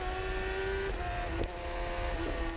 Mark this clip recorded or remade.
recorded